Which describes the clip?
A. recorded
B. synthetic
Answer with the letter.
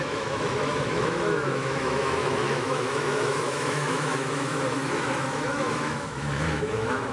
B